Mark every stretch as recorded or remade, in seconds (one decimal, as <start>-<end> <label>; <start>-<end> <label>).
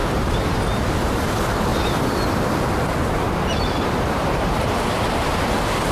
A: 0.0-0.6 remade; 0.6-1.7 recorded; 1.7-5.2 remade; 5.2-5.9 recorded